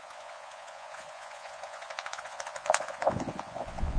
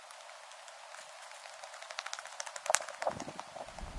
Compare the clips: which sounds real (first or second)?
second